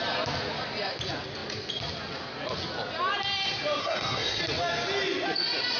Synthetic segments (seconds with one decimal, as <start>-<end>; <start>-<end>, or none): 3.8-4.4